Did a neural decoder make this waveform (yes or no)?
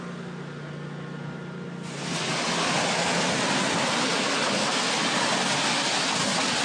no